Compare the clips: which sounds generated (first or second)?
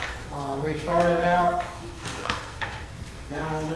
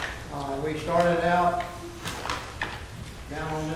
first